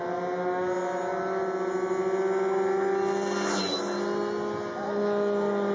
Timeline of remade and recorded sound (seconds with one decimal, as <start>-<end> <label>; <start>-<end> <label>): 0.0-5.7 recorded